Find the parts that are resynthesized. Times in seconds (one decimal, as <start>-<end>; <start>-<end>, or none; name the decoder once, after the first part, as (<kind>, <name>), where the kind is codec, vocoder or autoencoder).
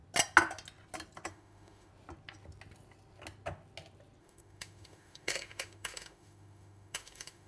1.3-1.9 (autoencoder, DAC-VAE); 4.2-7.5